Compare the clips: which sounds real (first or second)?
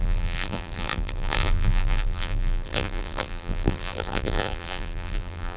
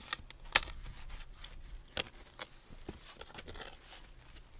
second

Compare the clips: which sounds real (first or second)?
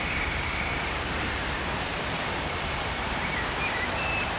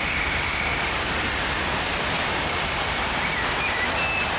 second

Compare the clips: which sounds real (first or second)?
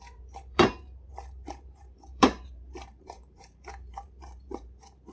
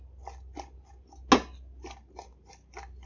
second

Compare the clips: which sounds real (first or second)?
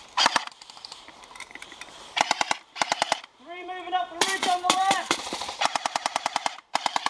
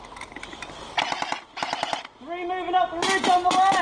second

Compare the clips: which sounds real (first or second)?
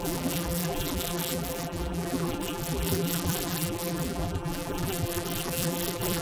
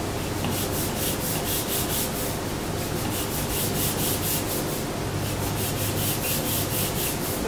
second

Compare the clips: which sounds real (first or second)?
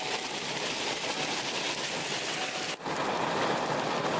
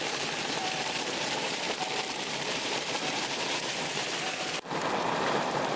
first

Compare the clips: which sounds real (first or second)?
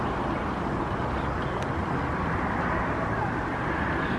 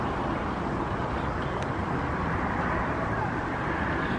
first